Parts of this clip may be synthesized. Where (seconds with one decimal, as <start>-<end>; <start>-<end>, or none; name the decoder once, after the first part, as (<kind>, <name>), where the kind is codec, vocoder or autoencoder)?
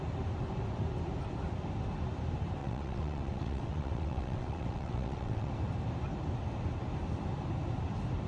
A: 2.6-5.5 (vocoder, WaveNeXt)